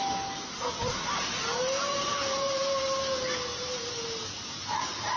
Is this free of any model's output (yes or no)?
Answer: yes